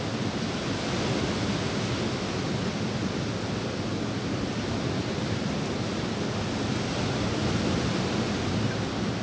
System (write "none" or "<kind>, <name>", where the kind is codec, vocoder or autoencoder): none